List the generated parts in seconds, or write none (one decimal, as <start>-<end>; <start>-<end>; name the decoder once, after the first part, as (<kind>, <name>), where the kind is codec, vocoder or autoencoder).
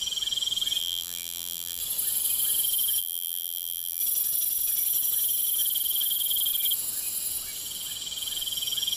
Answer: 0.8-1.8 (vocoder, BigVGAN v2); 3.0-4.0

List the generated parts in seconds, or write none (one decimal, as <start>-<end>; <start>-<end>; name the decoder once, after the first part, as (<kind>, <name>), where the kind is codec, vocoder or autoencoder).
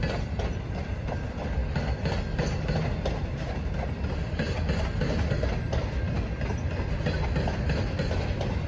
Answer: none